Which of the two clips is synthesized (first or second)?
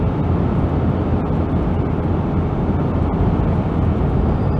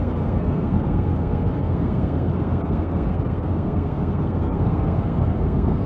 second